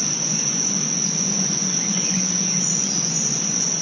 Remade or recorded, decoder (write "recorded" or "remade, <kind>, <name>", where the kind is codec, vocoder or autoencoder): remade, vocoder, Vocos